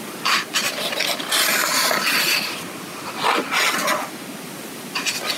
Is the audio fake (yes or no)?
no